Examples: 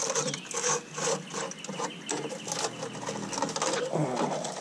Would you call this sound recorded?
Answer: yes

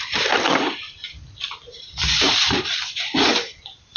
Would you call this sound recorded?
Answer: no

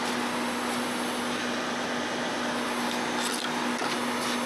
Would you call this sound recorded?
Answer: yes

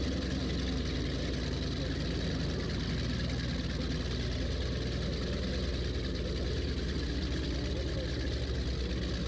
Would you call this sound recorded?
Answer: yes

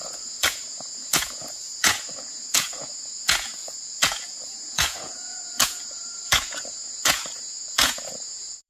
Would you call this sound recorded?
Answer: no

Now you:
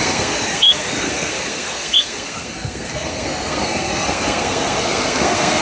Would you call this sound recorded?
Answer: no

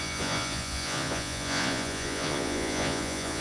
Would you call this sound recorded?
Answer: no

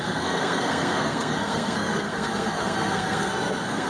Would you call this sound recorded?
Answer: no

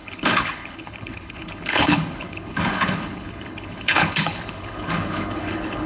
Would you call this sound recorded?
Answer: no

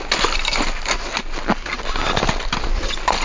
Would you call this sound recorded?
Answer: yes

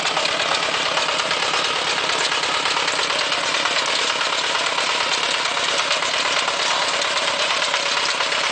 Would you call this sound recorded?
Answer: yes